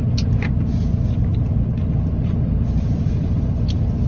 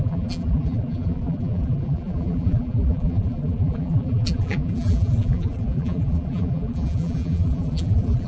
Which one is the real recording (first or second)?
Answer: first